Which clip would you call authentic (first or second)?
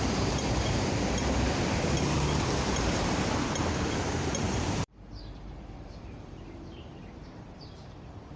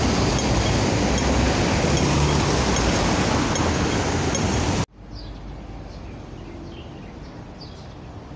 second